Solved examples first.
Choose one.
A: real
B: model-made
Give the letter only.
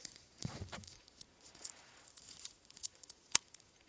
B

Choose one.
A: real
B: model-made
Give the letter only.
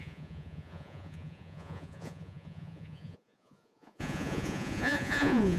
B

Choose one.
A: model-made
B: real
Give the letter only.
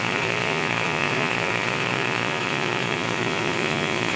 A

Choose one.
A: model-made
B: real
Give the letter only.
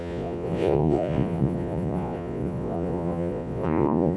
A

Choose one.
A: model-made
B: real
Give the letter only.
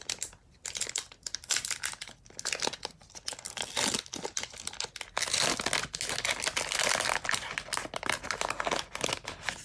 B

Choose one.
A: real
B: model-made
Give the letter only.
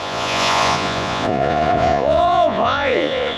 B